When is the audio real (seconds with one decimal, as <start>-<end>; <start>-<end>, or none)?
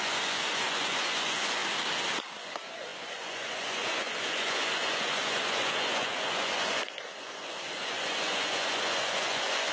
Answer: 1.6-2.4